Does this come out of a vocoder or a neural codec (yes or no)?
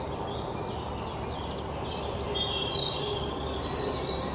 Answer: no